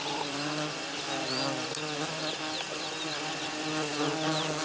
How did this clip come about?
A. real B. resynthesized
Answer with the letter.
A